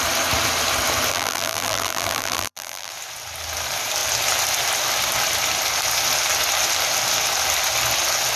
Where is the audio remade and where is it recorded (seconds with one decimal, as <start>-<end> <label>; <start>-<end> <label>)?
0.0-1.1 recorded; 1.1-2.9 remade; 2.9-8.4 recorded